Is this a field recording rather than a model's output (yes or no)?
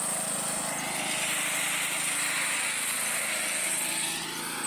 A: yes